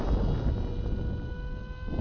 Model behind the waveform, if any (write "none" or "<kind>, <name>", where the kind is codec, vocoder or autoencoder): none